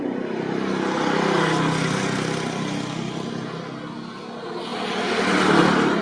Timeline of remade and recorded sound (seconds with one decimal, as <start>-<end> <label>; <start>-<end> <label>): 0.0-6.0 recorded